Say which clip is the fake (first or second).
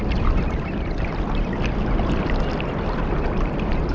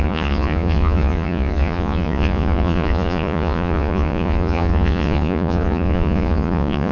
second